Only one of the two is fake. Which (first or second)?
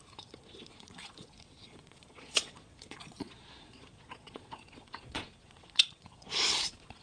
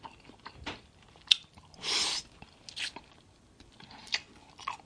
first